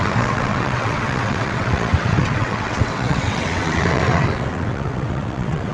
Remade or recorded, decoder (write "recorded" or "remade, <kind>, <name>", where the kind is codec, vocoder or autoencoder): remade, vocoder, WaveNeXt